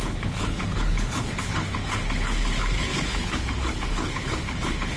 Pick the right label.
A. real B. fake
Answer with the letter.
B